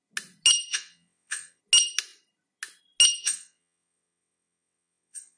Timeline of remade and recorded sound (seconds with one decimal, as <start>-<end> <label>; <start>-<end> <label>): 0.0-0.7 recorded; 0.7-1.6 remade; 1.6-3.2 recorded; 3.2-5.4 remade